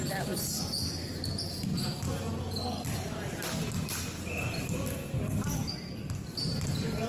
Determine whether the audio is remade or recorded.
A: recorded